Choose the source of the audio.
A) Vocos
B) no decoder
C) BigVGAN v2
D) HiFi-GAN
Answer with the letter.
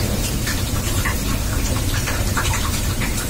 C